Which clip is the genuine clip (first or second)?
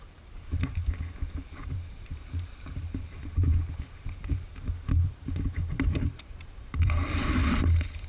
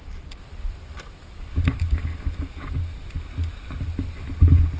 second